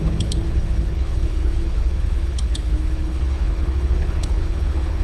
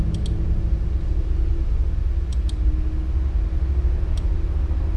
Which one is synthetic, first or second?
first